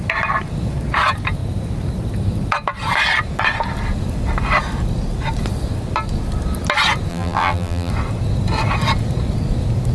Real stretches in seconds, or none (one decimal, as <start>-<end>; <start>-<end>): 0.0-7.1; 7.9-9.9